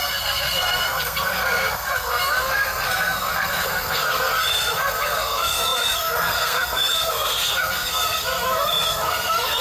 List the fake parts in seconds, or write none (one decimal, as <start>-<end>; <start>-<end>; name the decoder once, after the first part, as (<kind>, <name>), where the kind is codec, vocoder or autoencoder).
0.0-9.6 (codec, SNAC)